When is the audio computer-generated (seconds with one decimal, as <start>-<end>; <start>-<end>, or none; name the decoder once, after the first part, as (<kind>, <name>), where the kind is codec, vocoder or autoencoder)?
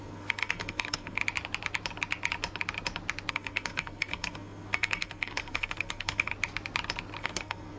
0.0-1.2 (codec, SNAC); 3.3-6.3; 7.2-7.8